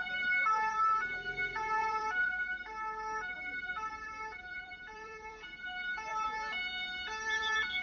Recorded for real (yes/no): no